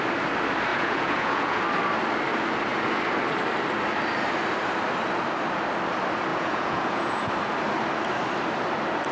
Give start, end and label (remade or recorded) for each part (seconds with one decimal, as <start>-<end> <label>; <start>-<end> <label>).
0.0-0.7 recorded; 0.7-1.6 remade; 1.6-6.3 recorded; 6.3-7.3 remade; 7.3-9.1 recorded